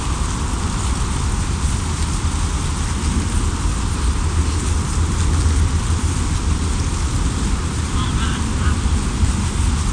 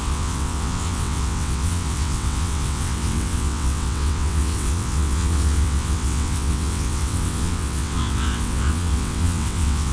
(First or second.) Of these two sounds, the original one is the first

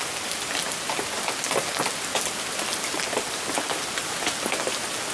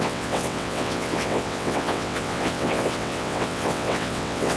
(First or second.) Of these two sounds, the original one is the first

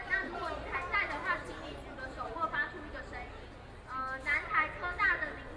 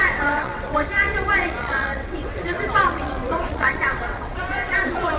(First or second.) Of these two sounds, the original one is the first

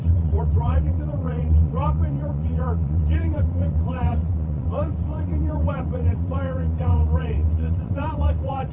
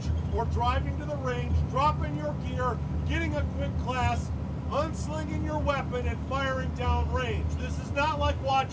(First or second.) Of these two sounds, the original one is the second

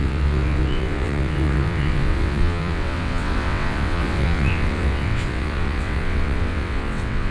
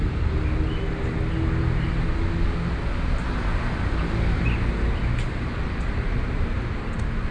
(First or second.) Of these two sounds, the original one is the second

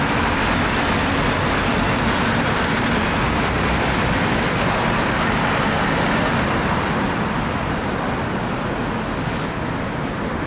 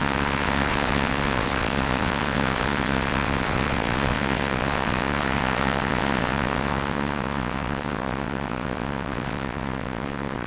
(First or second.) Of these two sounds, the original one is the first